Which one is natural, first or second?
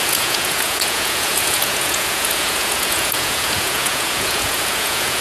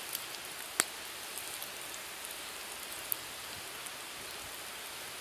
second